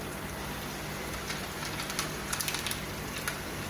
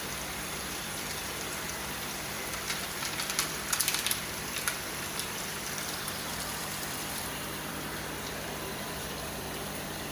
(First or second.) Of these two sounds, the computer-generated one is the second